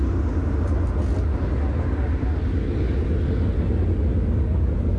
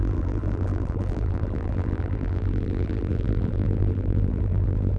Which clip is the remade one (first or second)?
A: second